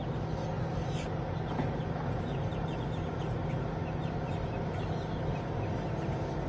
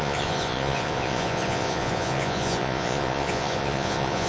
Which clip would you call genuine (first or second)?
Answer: first